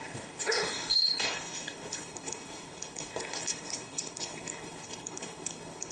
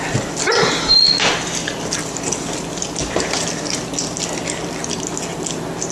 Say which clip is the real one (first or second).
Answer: second